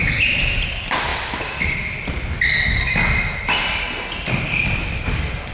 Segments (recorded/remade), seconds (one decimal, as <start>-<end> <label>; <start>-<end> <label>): 0.0-5.5 recorded